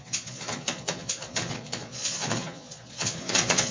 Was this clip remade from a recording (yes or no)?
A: yes